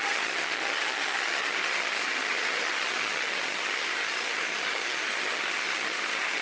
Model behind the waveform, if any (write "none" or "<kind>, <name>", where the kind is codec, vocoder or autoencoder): vocoder, HiFi-GAN